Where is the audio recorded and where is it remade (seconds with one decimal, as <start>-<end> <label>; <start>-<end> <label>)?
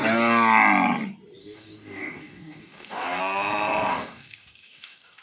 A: 0.0-1.4 recorded; 1.4-3.2 remade; 3.2-3.9 recorded; 3.9-5.2 remade